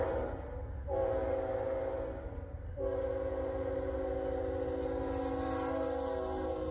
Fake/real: real